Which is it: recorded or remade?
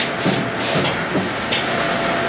recorded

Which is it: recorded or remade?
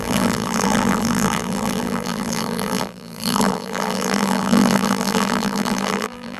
remade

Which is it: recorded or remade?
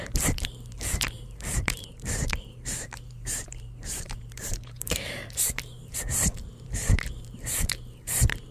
remade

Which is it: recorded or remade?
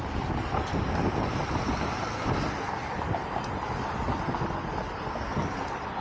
recorded